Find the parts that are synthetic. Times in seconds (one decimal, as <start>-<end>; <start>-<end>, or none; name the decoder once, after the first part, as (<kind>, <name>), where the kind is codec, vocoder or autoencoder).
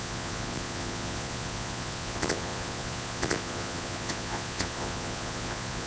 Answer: 0.0-5.9 (vocoder, Vocos)